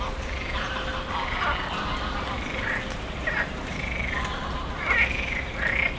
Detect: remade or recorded recorded